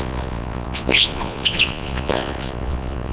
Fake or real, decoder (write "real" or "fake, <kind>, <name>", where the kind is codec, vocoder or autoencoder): fake, vocoder, Vocos